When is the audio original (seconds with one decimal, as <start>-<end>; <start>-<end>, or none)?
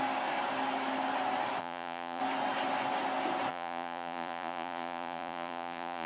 0.0-1.6; 2.2-3.5